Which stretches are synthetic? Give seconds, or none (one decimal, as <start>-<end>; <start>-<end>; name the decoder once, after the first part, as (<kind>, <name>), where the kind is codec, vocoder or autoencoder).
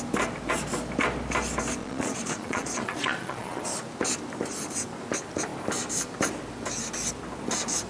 1.8-3.6 (vocoder, Vocos)